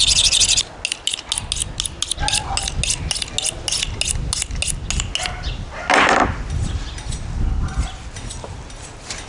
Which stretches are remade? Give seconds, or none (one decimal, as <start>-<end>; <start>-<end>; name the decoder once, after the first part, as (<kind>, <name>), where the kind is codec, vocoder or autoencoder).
none

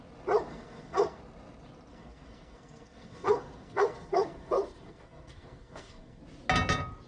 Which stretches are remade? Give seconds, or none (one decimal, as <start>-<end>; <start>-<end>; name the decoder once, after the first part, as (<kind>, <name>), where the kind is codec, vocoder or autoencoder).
0.5-1.2 (codec, SNAC); 1.9-6.2